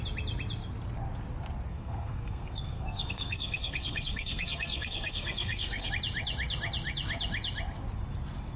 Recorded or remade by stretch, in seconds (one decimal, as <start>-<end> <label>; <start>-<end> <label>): 0.0-1.7 recorded; 1.7-5.9 remade; 5.9-8.6 recorded